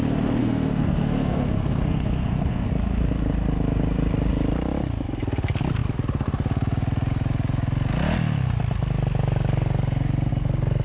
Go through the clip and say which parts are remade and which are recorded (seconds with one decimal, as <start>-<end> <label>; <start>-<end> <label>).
0.0-0.4 recorded; 0.4-2.7 remade; 2.7-10.8 recorded